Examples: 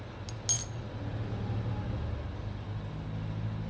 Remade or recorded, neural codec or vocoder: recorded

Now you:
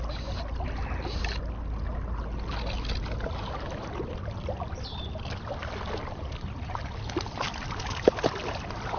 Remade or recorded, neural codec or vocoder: recorded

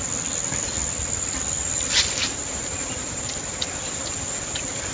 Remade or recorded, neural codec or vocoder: recorded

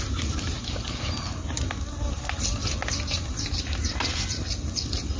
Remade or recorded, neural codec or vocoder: recorded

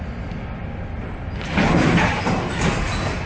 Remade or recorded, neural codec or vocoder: recorded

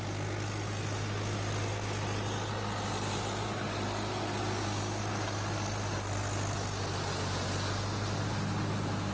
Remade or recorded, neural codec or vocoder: recorded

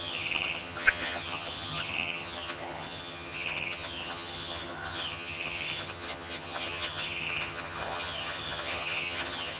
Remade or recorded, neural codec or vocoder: remade, vocoder, HiFi-GAN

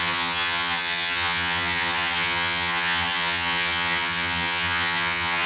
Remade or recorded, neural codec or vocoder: remade, vocoder, HiFi-GAN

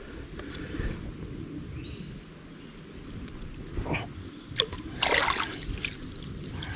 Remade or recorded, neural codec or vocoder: recorded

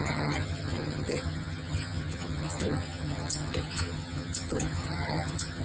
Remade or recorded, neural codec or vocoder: remade, vocoder, HiFi-GAN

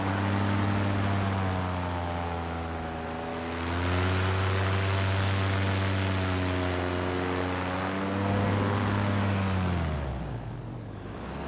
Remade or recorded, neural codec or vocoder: recorded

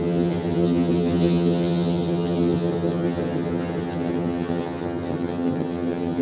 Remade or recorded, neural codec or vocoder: remade, vocoder, HiFi-GAN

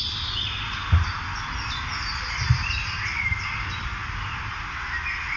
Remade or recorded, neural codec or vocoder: recorded